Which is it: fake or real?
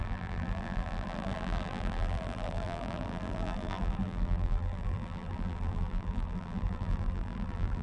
fake